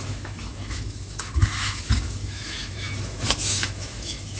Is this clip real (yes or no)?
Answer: no